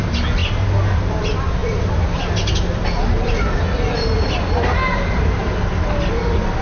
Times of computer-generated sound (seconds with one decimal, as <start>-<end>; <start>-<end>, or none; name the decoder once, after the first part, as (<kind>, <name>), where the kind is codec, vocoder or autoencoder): none